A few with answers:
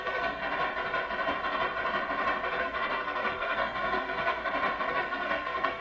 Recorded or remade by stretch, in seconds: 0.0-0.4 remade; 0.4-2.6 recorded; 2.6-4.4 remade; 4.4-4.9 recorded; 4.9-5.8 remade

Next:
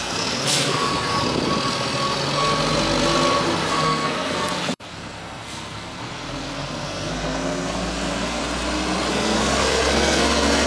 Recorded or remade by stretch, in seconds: 0.0-0.9 remade; 0.9-3.7 recorded; 3.7-8.4 remade; 8.4-9.1 recorded; 9.1-10.7 remade

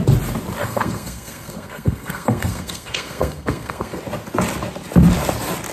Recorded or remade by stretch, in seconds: 0.0-0.6 recorded; 0.6-4.0 remade; 4.0-5.7 recorded

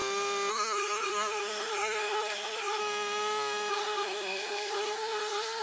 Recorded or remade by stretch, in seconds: 0.0-0.5 recorded; 0.5-2.8 remade; 2.8-3.7 recorded; 3.7-5.6 remade